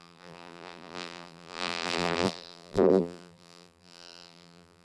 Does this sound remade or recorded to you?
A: remade